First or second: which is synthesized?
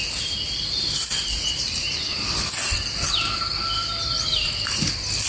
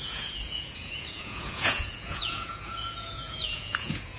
second